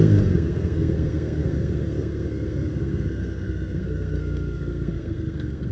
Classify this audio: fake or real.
fake